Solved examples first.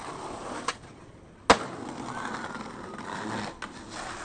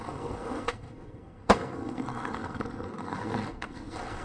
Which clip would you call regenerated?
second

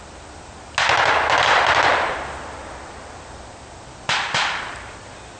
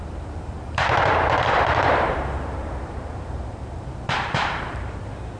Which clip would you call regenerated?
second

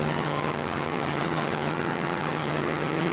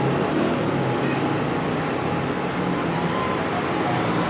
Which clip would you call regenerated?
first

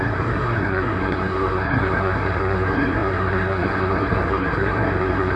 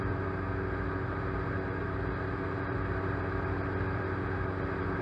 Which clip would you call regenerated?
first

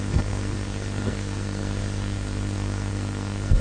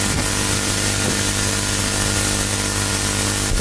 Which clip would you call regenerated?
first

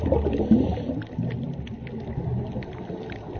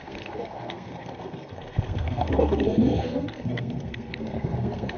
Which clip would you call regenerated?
second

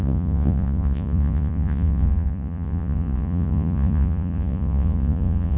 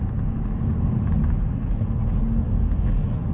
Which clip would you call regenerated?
first